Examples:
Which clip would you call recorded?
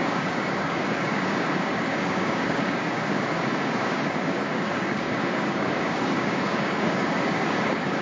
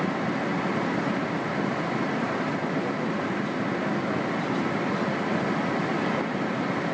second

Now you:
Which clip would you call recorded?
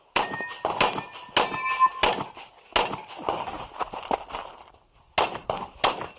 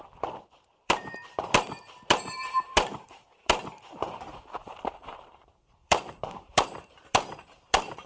first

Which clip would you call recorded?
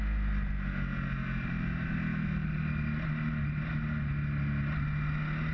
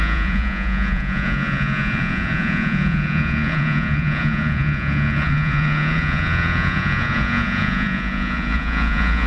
first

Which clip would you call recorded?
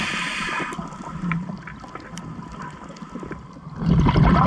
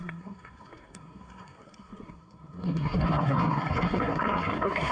first